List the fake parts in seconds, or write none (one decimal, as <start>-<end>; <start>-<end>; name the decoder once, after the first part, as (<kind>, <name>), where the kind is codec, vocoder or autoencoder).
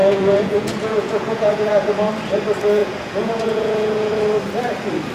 0.0-2.1 (vocoder, Vocos); 2.8-4.1